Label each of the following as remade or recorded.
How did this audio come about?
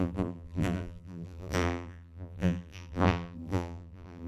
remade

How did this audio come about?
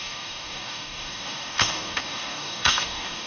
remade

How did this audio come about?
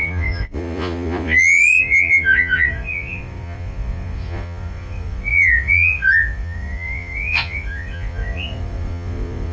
remade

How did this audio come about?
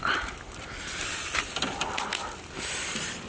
recorded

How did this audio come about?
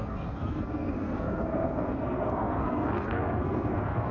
remade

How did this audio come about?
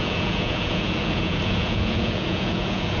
remade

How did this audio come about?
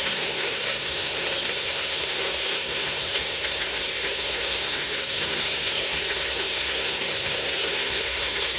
remade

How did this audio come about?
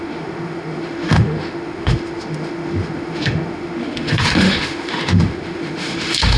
remade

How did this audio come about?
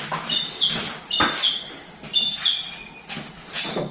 recorded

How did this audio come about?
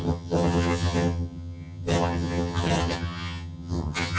remade